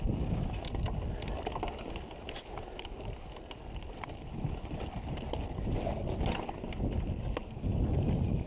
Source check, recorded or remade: recorded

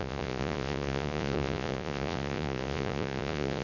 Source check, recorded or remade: remade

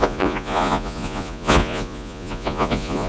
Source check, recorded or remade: remade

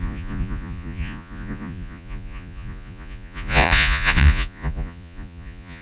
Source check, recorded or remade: remade